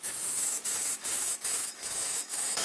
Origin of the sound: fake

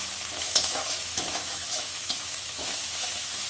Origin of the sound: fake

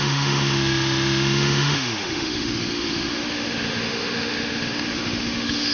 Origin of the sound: fake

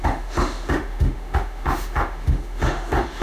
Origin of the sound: fake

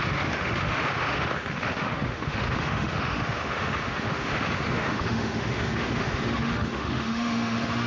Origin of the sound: fake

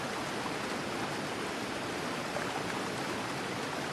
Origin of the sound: real